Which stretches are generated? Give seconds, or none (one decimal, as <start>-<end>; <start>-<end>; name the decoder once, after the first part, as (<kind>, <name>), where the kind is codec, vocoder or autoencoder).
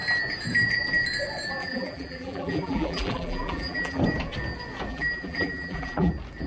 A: 1.6-4.0 (vocoder, BigVGAN v2); 4.9-6.1